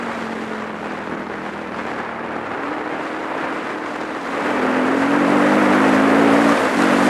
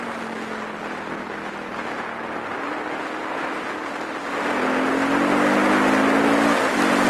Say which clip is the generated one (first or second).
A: first